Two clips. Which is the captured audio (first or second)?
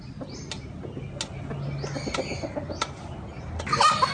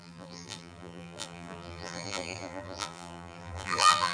first